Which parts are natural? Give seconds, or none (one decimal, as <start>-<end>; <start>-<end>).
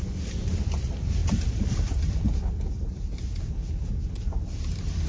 0.0-5.1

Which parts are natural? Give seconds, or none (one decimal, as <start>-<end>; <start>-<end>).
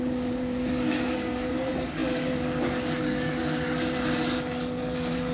none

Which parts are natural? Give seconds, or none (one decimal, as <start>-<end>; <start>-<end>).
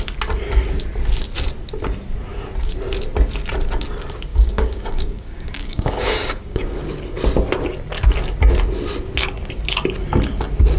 0.0-4.3; 6.8-10.8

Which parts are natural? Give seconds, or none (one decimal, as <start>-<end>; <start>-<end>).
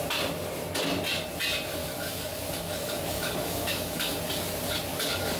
0.0-1.8; 4.2-4.9